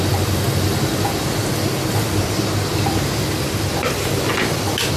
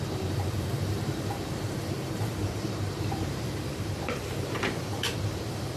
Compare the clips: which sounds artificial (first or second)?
second